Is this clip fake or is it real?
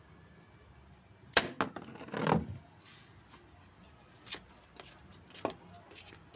real